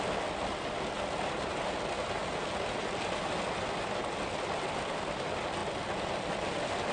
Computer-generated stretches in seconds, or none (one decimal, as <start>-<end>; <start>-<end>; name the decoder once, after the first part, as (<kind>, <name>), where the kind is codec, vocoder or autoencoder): none